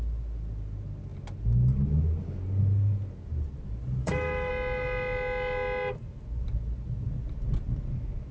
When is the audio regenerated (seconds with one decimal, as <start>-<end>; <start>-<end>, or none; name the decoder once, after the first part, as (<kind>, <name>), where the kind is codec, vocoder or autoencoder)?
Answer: 4.0-4.5 (autoencoder, DAC-VAE)